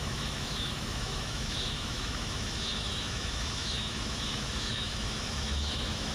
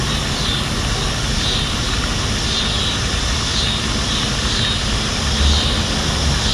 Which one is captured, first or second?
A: second